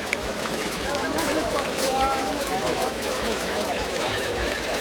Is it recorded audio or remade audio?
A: remade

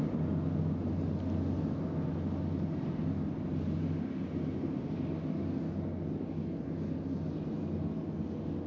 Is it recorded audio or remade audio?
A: recorded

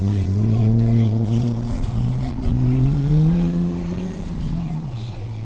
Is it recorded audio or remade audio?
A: remade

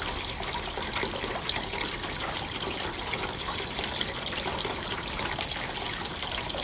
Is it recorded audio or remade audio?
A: recorded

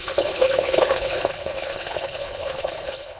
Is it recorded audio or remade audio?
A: remade